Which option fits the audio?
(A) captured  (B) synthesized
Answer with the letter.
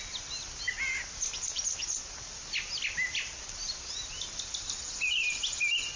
A